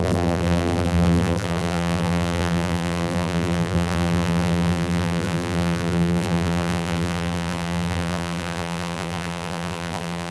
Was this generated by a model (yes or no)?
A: yes